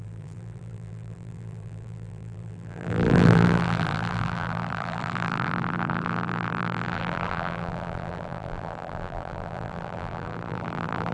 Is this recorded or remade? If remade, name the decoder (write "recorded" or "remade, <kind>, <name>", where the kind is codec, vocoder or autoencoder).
remade, vocoder, BigVGAN v2